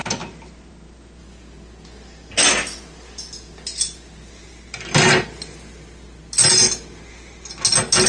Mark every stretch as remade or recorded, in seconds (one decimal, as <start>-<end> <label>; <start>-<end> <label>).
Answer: 0.0-8.1 recorded